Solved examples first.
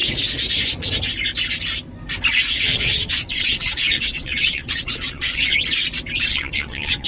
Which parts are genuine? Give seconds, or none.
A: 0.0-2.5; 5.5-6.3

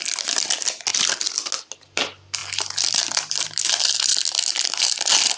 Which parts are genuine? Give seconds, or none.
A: 0.0-5.4

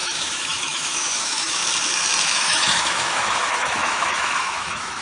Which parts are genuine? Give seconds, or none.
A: 1.6-2.2

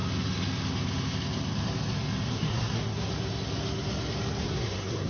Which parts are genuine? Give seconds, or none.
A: 0.0-2.3; 3.1-4.4

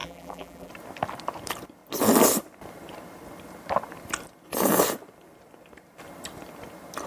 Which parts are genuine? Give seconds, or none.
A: 0.7-7.1

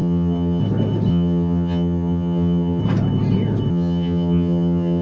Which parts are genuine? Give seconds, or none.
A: 0.6-1.1; 2.8-3.7

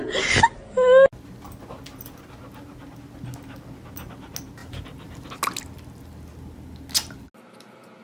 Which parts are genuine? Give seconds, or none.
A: 0.0-4.6; 5.3-8.0